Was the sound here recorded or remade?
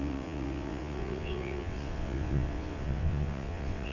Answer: remade